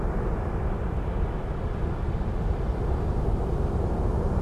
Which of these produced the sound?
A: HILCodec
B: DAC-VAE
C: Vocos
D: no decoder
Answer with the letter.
D